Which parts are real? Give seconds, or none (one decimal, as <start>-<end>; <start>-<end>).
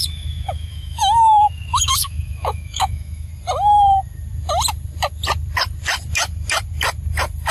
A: 3.3-7.5